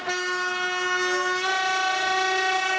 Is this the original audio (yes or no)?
yes